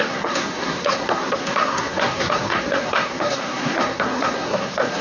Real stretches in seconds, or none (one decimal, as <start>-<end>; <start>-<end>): none